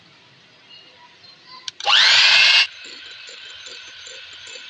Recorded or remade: recorded